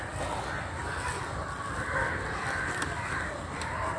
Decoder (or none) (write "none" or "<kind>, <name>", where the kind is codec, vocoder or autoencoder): none